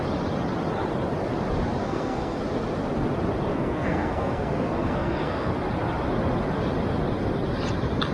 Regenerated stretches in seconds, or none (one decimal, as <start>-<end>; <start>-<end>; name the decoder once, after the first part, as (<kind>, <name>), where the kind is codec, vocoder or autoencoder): 1.8-2.4 (codec, SNAC); 3.5-5.5